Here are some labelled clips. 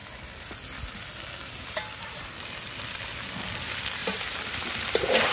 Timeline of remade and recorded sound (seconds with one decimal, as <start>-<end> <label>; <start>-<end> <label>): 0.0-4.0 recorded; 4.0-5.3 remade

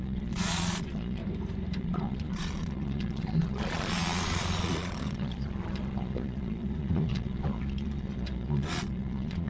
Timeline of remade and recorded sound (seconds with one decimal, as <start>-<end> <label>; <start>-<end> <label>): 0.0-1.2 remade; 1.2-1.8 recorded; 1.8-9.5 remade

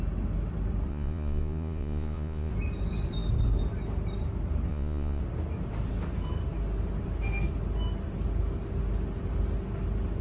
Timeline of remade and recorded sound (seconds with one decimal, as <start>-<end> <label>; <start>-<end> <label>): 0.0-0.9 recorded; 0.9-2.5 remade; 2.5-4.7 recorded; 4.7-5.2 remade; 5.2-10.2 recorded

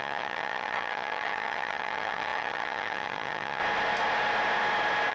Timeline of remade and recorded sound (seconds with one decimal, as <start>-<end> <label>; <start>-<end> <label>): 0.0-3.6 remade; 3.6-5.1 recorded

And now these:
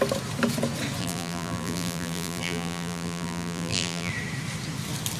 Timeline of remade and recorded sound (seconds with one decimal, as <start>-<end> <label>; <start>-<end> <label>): 0.0-1.0 recorded; 1.0-4.1 remade; 4.1-5.2 recorded

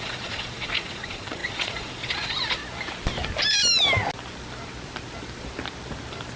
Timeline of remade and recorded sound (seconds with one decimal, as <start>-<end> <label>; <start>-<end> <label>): 0.0-2.6 remade; 2.6-6.4 recorded

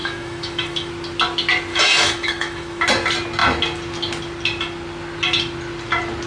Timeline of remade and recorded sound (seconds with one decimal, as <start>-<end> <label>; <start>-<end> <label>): 0.0-0.9 remade; 0.9-1.7 recorded; 1.7-2.8 remade; 2.8-6.3 recorded